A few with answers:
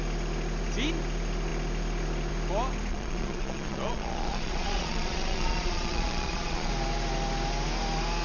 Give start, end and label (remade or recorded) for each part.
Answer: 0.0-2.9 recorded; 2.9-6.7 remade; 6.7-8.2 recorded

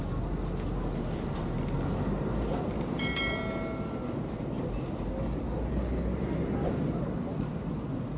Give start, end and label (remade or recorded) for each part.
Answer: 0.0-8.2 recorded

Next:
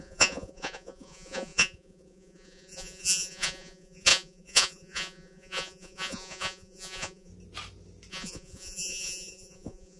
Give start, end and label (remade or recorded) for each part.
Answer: 0.0-7.3 remade; 7.3-8.1 recorded; 8.1-10.0 remade

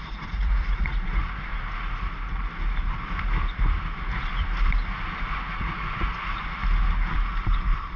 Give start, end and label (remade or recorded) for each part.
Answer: 0.0-1.5 remade; 1.5-5.2 recorded; 5.2-6.6 remade; 6.6-8.0 recorded

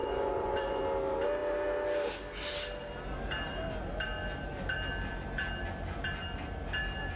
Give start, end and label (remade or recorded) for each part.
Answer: 0.0-0.8 remade; 0.8-7.2 recorded

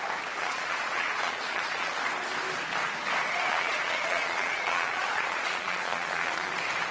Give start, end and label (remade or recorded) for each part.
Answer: 0.0-0.4 recorded; 0.4-1.9 remade; 1.9-3.5 recorded; 3.5-6.5 remade; 6.5-6.9 recorded

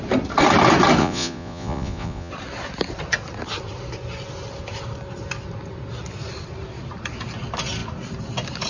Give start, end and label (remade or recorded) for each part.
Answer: 0.0-1.0 recorded; 1.0-2.3 remade; 2.3-8.7 recorded